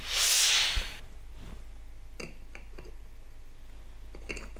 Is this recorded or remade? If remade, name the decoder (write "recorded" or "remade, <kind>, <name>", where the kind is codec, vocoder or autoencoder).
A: recorded